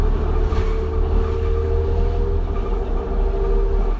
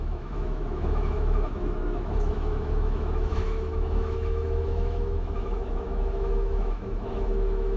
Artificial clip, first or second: second